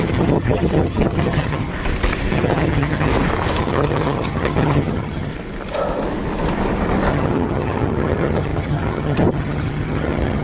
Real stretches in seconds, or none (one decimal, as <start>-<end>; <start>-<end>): 1.7-2.3; 3.1-3.6; 5.3-7.1